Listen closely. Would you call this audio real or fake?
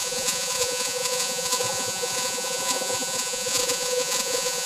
fake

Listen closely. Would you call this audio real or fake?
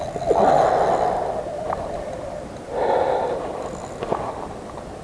real